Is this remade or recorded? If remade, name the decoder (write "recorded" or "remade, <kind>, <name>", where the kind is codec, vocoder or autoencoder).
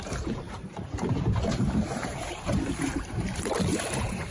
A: remade, vocoder, BigVGAN v2